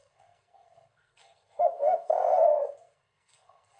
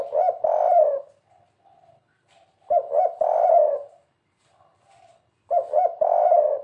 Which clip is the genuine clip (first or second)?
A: second